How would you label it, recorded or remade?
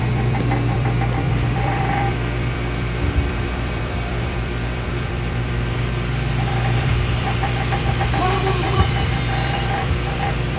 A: remade